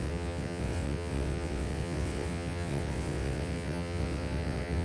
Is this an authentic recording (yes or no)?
no